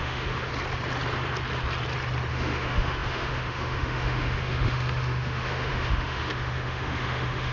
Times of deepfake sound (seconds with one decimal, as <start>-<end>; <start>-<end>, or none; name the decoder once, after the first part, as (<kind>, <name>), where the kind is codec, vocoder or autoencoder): 0.0-0.5 (autoencoder, DAC-VAE); 2.3-7.5